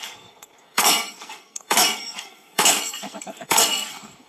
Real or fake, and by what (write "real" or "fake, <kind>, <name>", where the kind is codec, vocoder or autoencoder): fake, codec, SNAC